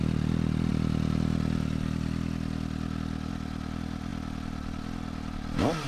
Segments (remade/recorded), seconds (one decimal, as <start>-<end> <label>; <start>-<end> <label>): 0.0-5.9 recorded